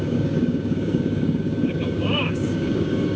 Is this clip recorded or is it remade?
remade